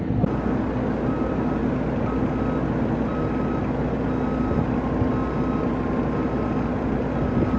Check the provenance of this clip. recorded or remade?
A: recorded